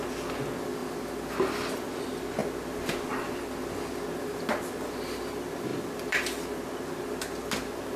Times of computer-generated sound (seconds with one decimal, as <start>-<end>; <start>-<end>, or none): none